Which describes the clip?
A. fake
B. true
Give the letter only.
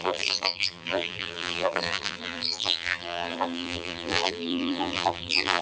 A